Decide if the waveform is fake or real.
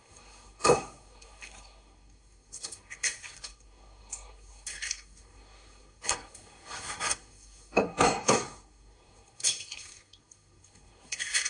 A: fake